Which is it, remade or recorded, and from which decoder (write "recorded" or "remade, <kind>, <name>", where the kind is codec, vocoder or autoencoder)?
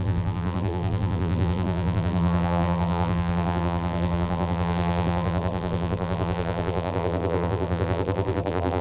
remade, vocoder, BigVGAN v2